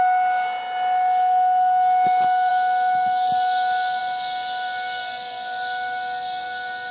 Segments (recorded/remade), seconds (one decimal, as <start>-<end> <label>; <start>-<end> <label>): 0.0-6.9 recorded